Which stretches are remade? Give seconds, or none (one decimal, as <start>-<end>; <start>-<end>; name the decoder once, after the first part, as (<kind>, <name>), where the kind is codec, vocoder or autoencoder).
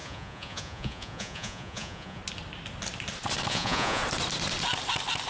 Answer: 0.0-2.2 (vocoder, Vocos); 3.5-4.0